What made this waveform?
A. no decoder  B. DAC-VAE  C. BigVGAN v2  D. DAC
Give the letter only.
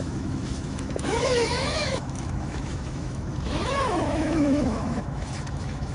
B